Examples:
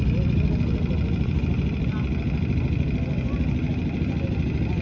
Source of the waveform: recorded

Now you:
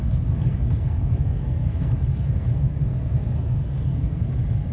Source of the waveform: remade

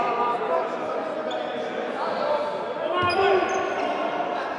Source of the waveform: recorded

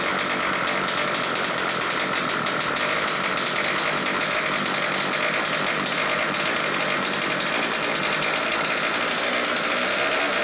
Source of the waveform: recorded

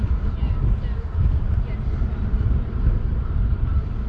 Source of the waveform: recorded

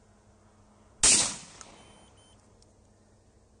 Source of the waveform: recorded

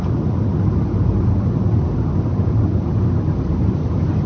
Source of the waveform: recorded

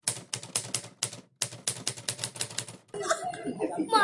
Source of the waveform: recorded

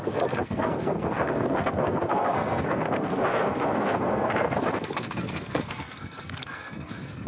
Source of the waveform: remade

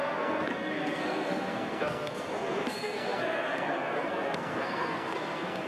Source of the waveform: remade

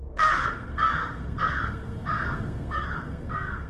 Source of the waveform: remade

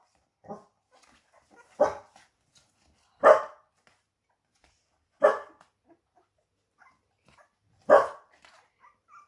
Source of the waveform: recorded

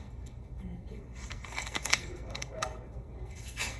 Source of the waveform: remade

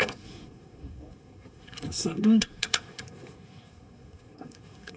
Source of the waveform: remade